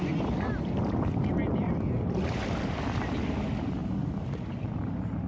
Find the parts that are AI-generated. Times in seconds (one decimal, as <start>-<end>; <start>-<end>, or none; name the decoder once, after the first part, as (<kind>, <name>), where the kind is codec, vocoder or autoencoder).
3.8-4.8 (vocoder, BigVGAN v2)